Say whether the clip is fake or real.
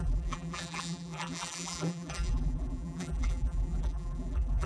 fake